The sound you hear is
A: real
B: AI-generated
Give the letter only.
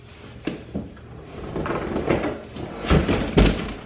A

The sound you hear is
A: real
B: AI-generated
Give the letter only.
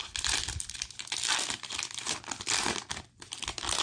A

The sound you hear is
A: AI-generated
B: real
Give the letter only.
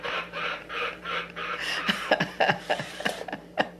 A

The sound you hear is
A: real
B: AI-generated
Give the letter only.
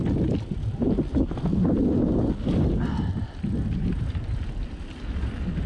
A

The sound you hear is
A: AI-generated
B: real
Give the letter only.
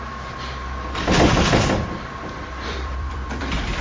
A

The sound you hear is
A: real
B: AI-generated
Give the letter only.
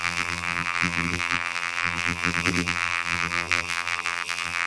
B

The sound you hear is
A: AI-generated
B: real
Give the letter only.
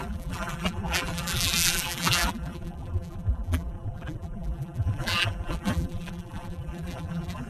A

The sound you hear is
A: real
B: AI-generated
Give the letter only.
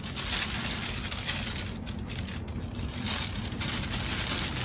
A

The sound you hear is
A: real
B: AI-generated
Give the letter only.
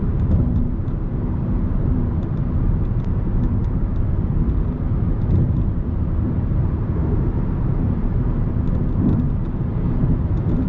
B